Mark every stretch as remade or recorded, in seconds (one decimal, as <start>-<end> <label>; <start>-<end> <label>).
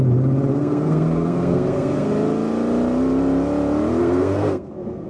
0.0-0.5 recorded; 0.5-2.1 remade; 2.1-4.0 recorded; 4.0-5.1 remade